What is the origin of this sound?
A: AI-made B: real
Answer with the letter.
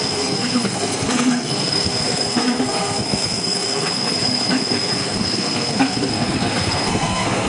A